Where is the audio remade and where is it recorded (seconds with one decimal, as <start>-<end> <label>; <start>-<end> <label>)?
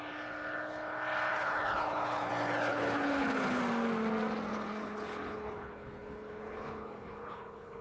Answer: 0.0-1.3 recorded; 1.3-2.3 remade; 2.3-2.7 recorded; 2.7-3.6 remade; 3.6-4.5 recorded; 4.5-7.8 remade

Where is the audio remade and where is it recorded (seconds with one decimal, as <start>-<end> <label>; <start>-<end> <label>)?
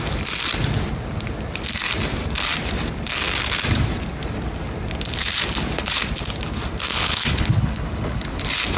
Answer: 0.0-6.9 recorded; 6.9-8.4 remade; 8.4-8.8 recorded